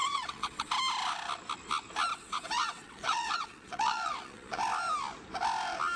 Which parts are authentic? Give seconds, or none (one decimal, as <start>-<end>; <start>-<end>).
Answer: 0.7-2.1; 4.6-6.0